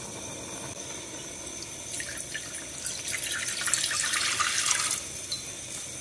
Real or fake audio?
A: real